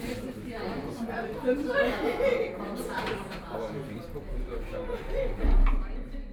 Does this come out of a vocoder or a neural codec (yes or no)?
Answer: no